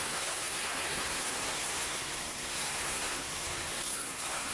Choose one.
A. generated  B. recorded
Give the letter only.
A